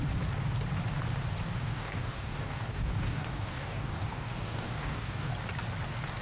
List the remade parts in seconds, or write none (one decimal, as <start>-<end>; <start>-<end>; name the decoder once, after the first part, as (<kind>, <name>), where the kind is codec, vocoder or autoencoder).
1.6-5.3 (codec, DAC)